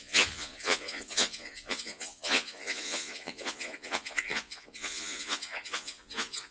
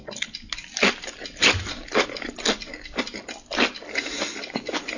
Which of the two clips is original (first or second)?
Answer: second